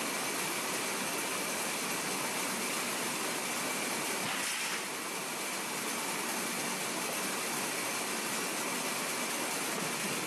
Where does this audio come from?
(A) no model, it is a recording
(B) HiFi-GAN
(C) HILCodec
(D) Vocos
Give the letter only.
A